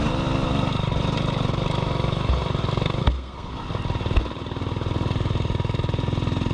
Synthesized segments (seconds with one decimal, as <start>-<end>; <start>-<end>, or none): 3.0-3.5